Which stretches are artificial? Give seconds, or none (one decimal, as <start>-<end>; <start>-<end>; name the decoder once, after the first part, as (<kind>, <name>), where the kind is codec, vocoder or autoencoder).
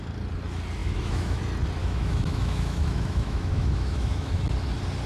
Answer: 0.8-1.4 (autoencoder, DAC-VAE); 1.8-4.4